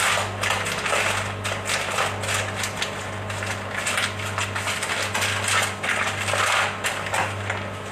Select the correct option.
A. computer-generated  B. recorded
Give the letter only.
B